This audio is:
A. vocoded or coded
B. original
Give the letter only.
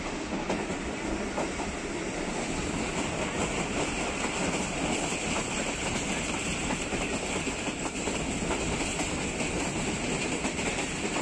B